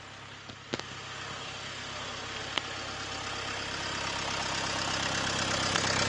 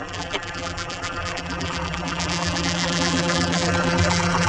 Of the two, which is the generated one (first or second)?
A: second